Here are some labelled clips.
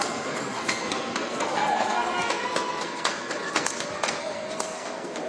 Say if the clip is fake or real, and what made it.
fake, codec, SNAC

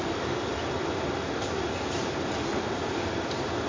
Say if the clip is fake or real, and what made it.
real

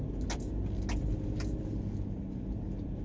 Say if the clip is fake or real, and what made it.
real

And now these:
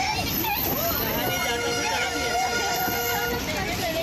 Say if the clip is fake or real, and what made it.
real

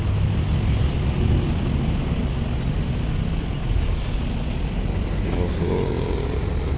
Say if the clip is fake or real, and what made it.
real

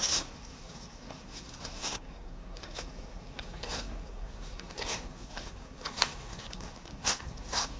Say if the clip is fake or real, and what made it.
fake, codec, SNAC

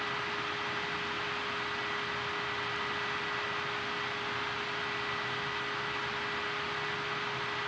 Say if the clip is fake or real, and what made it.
real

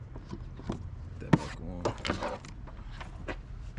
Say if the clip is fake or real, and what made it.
real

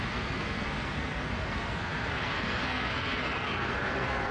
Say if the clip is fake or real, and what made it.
fake, codec, SNAC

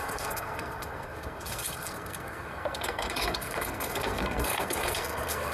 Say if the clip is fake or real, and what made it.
fake, codec, SNAC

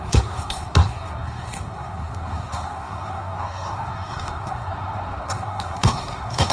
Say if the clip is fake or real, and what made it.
fake, codec, SNAC